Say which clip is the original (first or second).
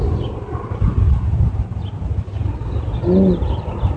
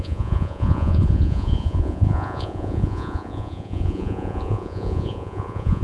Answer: first